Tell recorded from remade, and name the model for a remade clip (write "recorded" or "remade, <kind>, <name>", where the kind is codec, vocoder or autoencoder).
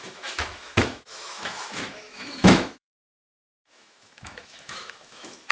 remade, autoencoder, DAC-VAE